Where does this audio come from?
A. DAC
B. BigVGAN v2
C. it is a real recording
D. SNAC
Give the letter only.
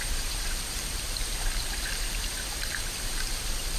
B